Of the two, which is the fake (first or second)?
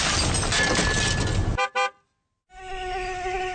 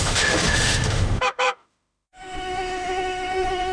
second